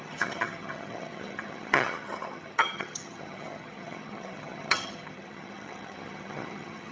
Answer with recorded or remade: remade